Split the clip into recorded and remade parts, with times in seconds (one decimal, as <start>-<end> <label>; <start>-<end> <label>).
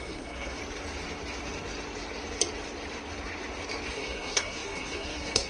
0.0-0.6 remade; 0.6-3.9 recorded; 3.9-5.5 remade